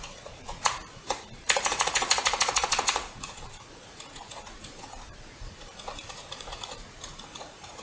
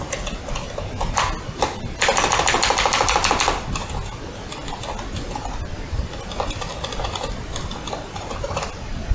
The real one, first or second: second